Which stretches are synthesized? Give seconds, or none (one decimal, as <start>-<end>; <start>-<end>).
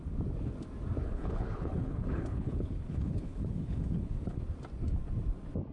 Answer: 1.0-4.4